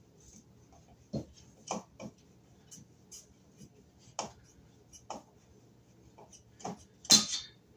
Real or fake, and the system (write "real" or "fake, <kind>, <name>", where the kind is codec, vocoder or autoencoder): real